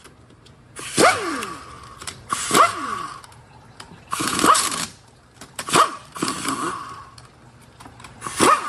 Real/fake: fake